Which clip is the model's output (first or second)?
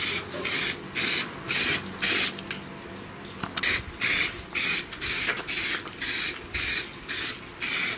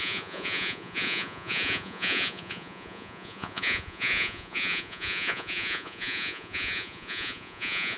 second